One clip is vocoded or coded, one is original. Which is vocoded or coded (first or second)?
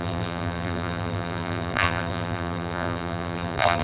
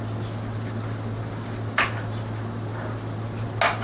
first